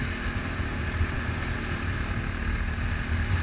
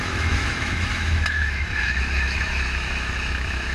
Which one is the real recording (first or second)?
first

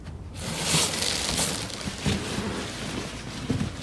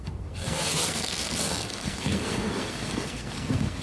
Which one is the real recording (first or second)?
first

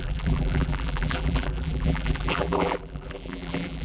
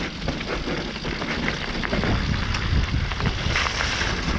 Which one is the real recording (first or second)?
second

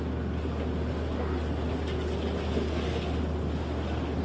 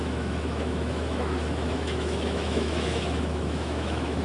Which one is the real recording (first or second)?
first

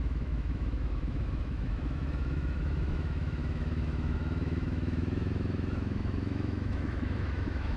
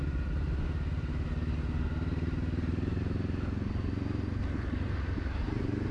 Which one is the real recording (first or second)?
second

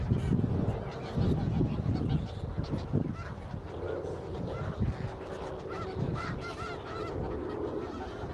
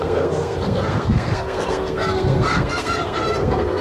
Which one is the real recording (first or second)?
first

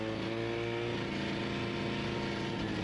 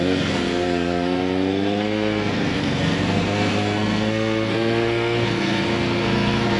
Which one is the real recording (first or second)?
first